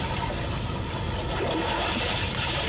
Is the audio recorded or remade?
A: recorded